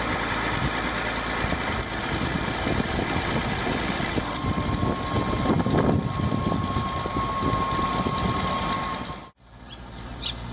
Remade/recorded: recorded